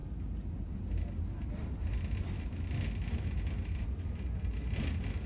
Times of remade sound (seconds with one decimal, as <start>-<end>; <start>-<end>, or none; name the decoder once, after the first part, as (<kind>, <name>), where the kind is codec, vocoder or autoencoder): none